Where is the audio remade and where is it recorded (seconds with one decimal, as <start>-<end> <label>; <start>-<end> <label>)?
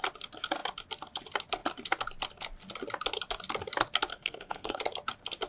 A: 0.0-4.1 recorded; 4.1-4.8 remade; 4.8-5.5 recorded